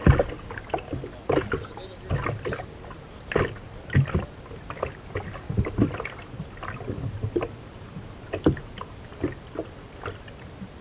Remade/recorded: recorded